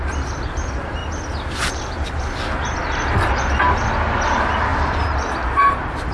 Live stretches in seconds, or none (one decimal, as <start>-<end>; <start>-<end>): 1.0-4.3; 4.7-6.1